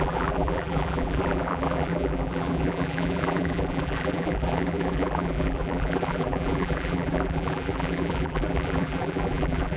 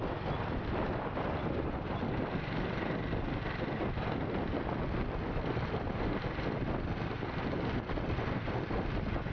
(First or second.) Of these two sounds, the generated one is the first